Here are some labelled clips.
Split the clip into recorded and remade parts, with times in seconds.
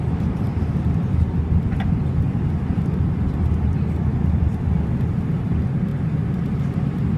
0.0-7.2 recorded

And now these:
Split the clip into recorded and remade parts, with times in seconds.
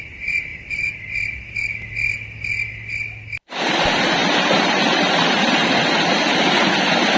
0.0-0.5 recorded; 0.5-1.1 remade; 1.1-4.2 recorded; 4.2-6.5 remade; 6.5-7.2 recorded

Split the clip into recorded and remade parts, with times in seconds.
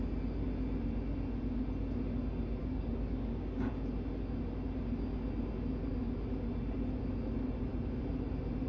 0.0-2.6 recorded; 2.6-3.7 remade; 3.7-8.7 recorded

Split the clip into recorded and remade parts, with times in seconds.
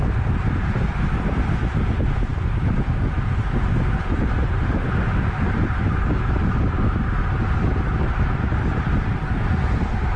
0.0-10.2 recorded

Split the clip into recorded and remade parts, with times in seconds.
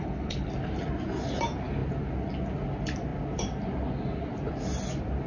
0.0-0.5 remade; 0.5-5.3 recorded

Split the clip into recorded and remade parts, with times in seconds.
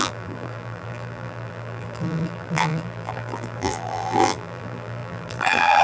0.0-5.8 remade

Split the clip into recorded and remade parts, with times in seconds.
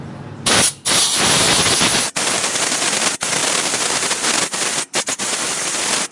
0.0-6.1 recorded